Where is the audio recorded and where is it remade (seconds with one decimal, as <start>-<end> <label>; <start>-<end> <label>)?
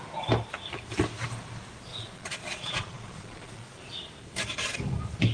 0.0-1.9 recorded; 1.9-3.9 remade; 3.9-5.3 recorded